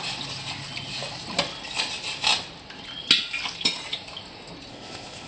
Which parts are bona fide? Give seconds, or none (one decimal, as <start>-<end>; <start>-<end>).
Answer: 0.0-4.7